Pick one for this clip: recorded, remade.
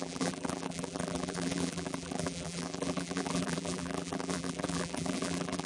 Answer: remade